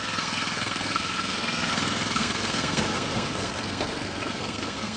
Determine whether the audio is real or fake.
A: fake